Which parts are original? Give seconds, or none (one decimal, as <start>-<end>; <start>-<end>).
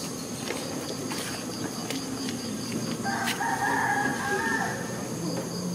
0.0-5.7